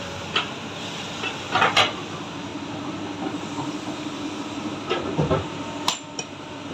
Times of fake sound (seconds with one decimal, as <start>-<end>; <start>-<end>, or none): 0.0-2.5; 5.1-6.7